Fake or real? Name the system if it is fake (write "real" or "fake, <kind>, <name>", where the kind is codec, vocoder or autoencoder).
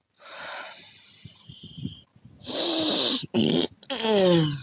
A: real